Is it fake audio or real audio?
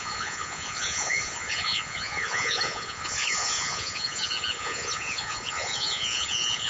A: fake